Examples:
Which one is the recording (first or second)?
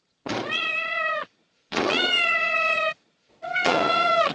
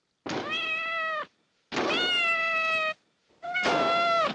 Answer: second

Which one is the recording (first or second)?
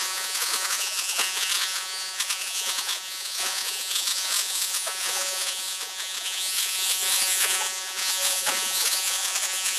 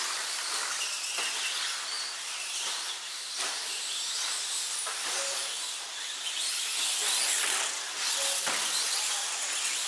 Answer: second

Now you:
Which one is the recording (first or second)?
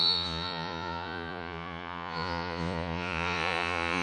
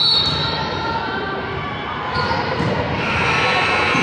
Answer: second